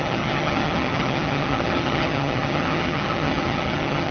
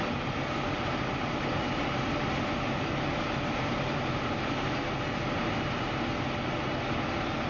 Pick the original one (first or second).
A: second